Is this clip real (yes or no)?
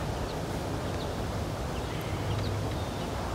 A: yes